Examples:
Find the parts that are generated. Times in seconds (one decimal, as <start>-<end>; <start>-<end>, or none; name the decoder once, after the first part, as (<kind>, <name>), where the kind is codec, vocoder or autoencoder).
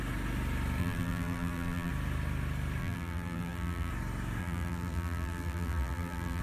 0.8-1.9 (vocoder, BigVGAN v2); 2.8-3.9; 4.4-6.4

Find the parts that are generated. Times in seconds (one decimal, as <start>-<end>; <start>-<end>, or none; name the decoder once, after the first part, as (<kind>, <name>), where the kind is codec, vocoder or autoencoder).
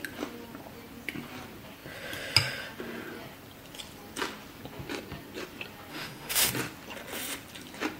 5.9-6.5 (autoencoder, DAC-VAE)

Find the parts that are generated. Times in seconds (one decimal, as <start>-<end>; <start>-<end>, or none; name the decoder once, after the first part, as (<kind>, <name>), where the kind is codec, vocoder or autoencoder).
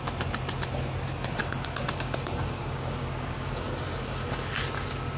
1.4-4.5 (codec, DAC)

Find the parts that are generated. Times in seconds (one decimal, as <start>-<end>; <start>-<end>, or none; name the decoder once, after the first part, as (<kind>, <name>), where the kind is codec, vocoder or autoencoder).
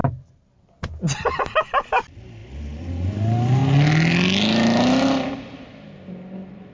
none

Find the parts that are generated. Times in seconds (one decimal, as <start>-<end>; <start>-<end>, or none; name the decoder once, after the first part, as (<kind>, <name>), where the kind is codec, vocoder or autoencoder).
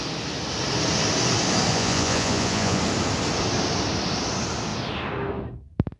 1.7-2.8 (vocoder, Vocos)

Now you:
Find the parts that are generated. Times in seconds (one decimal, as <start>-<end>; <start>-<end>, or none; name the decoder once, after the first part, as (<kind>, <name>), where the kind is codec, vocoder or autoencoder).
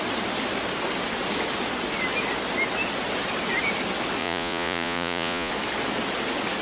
4.2-5.5 (vocoder, Vocos)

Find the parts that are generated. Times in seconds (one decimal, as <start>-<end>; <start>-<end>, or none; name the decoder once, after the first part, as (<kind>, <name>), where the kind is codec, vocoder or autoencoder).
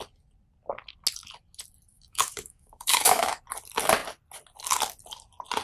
1.9-3.4 (autoencoder, DAC-VAE)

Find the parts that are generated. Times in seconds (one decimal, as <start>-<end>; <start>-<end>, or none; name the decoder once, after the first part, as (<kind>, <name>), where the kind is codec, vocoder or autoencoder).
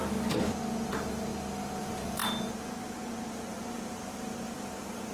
0.9-1.3 (vocoder, BigVGAN v2); 1.8-5.1